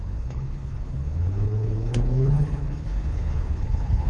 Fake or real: fake